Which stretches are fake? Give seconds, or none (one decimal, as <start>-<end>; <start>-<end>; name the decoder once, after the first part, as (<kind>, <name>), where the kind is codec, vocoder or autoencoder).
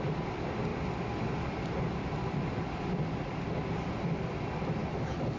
0.7-3.9 (vocoder, BigVGAN v2)